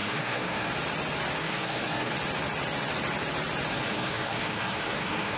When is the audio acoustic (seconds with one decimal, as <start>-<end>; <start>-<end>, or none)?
0.7-1.4; 2.1-3.7